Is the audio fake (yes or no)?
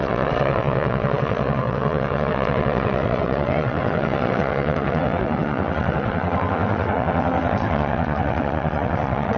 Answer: yes